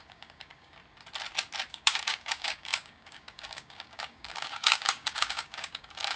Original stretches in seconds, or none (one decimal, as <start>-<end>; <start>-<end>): 0.8-1.7